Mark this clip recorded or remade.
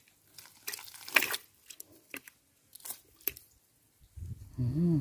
recorded